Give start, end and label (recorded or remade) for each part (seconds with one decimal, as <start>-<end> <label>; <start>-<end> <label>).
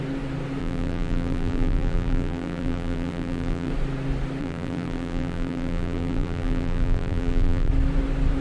0.0-0.6 recorded; 0.6-3.7 remade; 3.7-4.4 recorded; 4.4-7.7 remade; 7.7-8.4 recorded